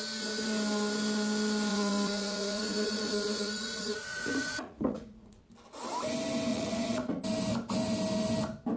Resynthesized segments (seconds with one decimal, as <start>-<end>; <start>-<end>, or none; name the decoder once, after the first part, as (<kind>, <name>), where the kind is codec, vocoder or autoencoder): 1.7-5.4 (vocoder, Vocos); 6.5-7.2